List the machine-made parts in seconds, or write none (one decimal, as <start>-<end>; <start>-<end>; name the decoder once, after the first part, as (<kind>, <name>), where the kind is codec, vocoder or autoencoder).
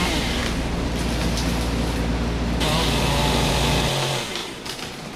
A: none